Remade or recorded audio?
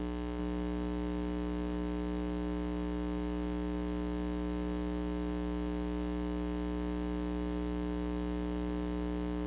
recorded